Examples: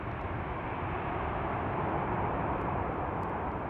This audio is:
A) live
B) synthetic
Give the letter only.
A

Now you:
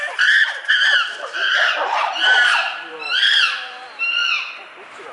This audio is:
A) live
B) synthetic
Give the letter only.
B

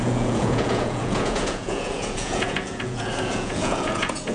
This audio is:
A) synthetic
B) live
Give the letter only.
A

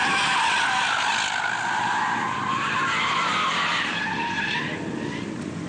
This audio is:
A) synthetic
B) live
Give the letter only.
B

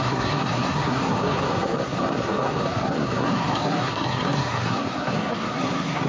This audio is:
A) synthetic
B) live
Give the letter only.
A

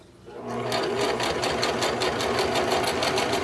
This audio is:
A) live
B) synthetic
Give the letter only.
A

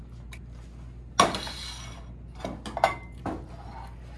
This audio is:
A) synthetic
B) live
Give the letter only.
B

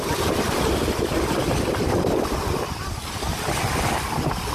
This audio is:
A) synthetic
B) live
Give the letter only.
B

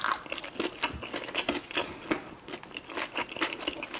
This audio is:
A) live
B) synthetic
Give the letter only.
A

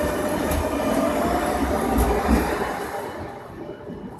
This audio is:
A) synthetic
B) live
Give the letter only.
B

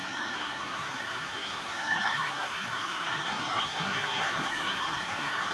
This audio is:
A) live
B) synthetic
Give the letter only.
B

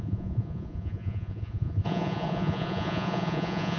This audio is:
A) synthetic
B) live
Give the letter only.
A